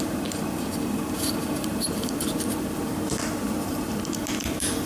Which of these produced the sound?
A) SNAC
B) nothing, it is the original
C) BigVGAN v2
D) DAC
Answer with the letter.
C